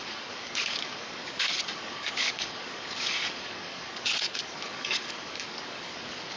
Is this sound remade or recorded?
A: remade